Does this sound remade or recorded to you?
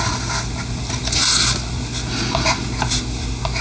recorded